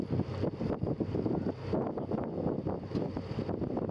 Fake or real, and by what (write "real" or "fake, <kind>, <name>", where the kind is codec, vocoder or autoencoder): real